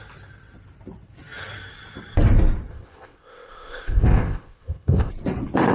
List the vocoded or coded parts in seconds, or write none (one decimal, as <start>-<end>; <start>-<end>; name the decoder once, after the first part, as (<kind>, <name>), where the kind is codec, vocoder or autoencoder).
2.7-5.1 (codec, ZipCodec)